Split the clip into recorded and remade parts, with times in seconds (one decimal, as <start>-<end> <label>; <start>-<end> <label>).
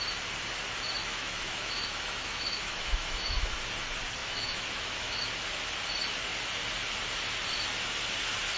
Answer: 0.0-1.0 recorded; 1.0-3.5 remade; 3.5-4.2 recorded; 4.2-5.2 remade; 5.2-8.6 recorded